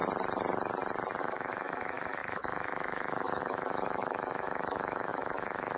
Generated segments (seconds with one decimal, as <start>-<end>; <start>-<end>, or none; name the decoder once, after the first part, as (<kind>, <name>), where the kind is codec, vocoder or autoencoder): 1.2-5.8 (autoencoder, DAC-VAE)